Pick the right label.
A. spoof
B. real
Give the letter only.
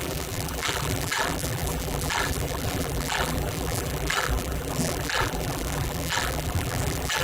A